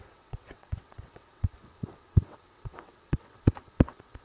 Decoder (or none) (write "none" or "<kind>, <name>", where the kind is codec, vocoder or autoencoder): vocoder, WaveNeXt